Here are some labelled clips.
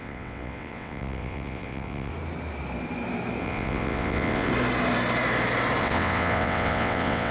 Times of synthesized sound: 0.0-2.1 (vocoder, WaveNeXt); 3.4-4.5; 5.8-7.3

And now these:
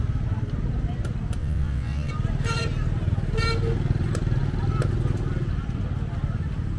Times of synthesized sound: 1.4-2.1 (vocoder, WaveNeXt)

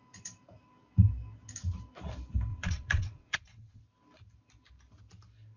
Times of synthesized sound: 2.5-3.8 (vocoder, WaveNeXt)

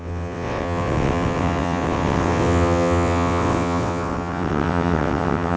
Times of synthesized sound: 0.0-5.6 (vocoder, WaveNeXt)